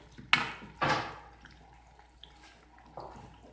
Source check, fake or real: real